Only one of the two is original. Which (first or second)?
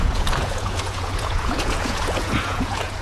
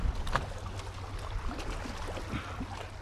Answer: second